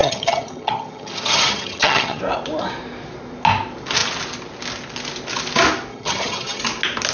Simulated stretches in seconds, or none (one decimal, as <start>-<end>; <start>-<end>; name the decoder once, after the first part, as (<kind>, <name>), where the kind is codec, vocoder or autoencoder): 0.0-2.2 (vocoder, HiFi-GAN); 5.9-6.6